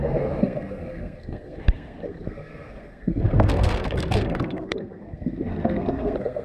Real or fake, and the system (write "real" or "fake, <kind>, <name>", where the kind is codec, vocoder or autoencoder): fake, codec, SNAC